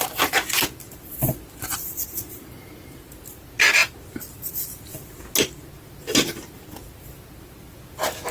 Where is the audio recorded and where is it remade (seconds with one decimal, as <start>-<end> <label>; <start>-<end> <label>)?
0.0-8.3 recorded